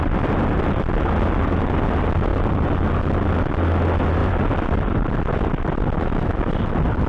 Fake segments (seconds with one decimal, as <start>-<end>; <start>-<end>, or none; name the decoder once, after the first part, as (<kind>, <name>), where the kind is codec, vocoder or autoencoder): 2.3-2.9 (vocoder, BigVGAN v2); 4.2-6.0